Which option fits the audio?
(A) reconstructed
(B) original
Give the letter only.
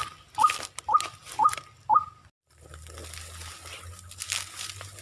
B